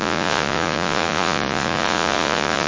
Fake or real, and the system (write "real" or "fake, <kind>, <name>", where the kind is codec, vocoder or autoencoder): fake, vocoder, Vocos